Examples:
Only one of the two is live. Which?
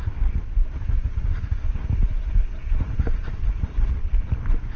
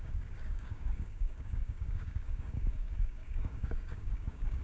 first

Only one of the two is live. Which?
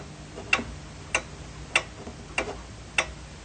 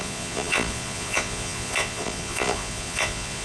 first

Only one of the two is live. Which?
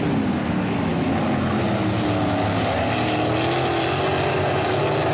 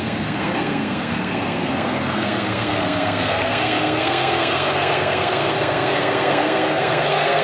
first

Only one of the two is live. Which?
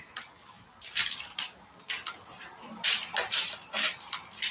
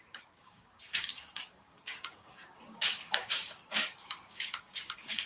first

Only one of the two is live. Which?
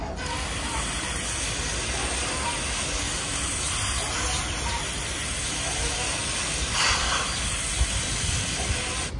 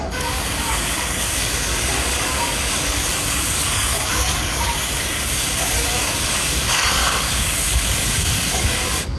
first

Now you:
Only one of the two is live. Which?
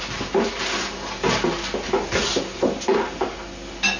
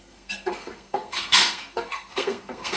first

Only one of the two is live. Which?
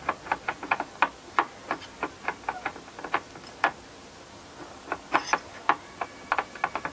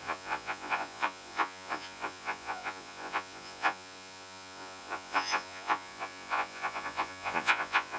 first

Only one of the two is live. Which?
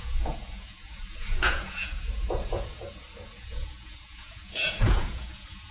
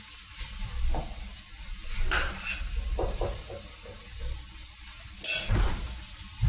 second